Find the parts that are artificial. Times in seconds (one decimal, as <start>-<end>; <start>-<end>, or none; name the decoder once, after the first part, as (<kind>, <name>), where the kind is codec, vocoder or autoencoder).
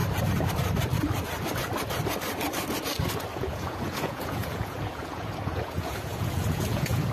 3.3-7.1 (vocoder, Vocos)